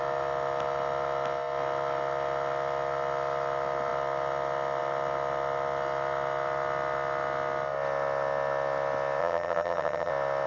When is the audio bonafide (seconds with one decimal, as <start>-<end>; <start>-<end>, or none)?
0.0-9.2; 10.1-10.5